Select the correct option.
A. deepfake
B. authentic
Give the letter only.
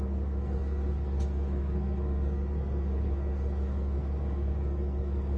A